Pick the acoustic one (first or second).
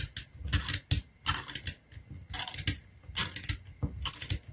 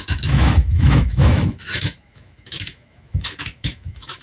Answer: first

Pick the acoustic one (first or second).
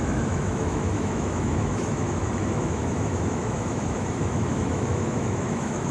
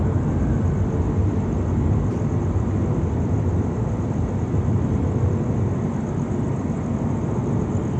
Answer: second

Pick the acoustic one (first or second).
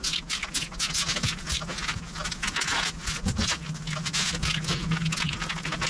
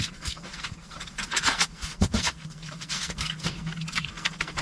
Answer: first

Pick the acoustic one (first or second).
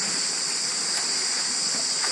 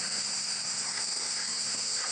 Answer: first